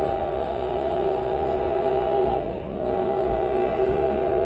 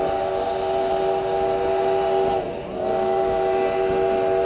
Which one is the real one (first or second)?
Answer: second